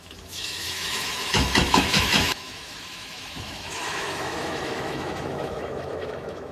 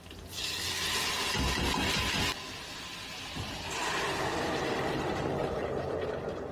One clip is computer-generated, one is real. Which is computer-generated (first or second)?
first